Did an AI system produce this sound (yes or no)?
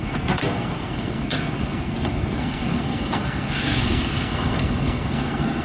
yes